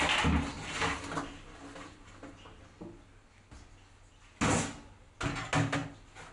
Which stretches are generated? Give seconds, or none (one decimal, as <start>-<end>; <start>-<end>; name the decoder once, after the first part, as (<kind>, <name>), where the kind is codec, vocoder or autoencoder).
none